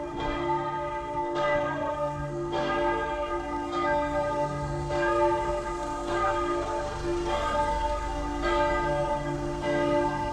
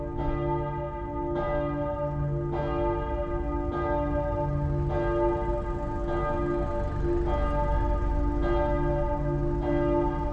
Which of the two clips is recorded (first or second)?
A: second